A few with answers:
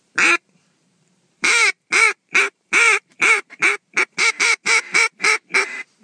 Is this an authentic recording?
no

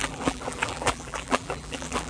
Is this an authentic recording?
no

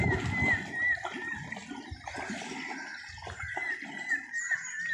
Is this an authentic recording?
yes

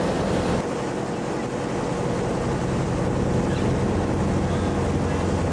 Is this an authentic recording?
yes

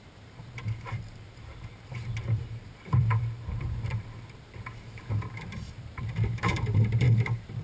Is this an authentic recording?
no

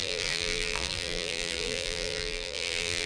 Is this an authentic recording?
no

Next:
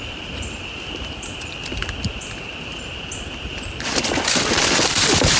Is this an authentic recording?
no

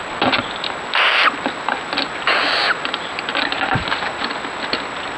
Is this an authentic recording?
yes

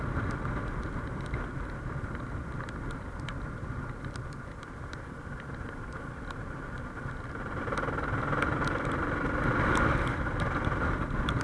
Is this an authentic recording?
yes